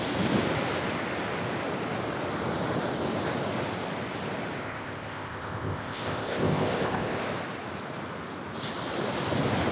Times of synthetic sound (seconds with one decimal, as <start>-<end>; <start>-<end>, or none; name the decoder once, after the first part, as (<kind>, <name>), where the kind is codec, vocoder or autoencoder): 4.6-7.2 (codec, ZipCodec)